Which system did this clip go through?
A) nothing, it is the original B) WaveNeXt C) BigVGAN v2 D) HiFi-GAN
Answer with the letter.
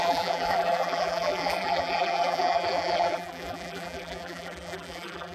C